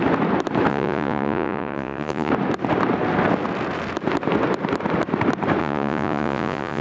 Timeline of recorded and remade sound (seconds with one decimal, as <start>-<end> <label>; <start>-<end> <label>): 0.0-0.7 recorded; 0.7-2.3 remade; 2.3-5.6 recorded; 5.6-6.8 remade